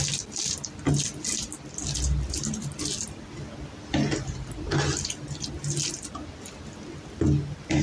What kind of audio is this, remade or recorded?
recorded